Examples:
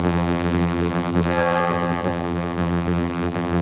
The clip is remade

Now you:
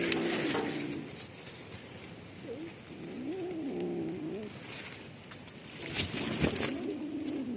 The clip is recorded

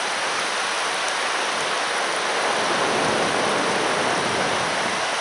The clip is recorded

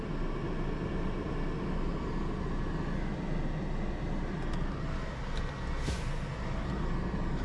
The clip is recorded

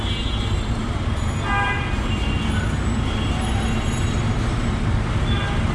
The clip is recorded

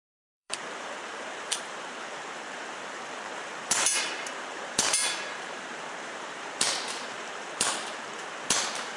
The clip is remade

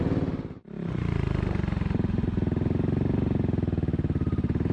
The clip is recorded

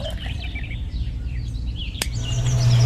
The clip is remade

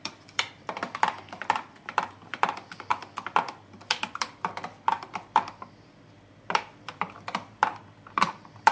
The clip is remade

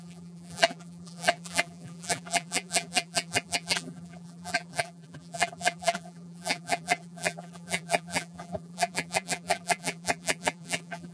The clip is remade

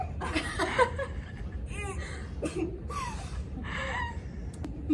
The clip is remade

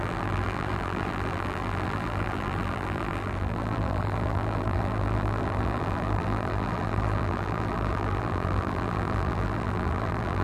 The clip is remade